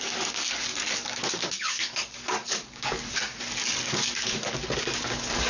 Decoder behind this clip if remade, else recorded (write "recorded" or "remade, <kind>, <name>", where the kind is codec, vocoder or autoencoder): remade, codec, DAC